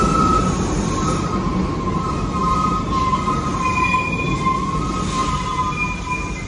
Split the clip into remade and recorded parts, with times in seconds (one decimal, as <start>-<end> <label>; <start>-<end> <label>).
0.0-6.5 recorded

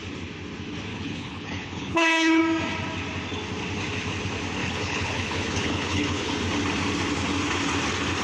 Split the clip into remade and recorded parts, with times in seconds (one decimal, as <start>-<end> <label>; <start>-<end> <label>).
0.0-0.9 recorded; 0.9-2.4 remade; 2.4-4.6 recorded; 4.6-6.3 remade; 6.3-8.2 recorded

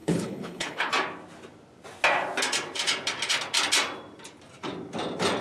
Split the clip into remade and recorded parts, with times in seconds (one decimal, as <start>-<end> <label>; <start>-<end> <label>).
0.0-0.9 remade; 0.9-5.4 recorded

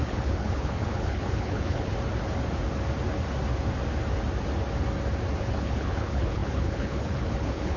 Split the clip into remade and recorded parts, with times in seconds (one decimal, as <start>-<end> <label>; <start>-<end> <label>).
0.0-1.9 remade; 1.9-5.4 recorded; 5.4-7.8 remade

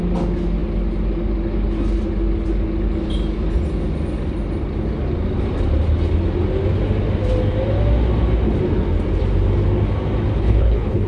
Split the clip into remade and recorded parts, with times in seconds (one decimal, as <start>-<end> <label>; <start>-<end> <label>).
0.0-10.4 recorded; 10.4-11.1 remade

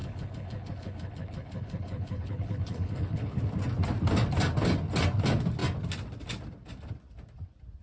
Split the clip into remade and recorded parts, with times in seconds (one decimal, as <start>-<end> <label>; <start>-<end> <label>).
0.0-3.4 remade; 3.4-7.8 recorded

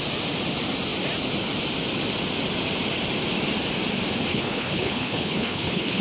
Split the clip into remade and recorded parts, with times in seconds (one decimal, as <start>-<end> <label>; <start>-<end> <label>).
0.0-4.3 recorded; 4.3-6.0 remade

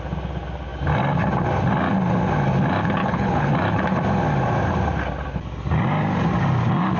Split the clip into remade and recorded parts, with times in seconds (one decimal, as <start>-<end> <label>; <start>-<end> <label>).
0.0-3.0 recorded; 3.0-3.5 remade; 3.5-7.0 recorded